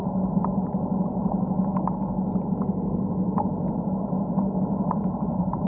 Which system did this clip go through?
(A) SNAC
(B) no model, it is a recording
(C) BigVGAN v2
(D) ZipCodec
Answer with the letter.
C